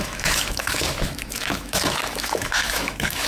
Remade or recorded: remade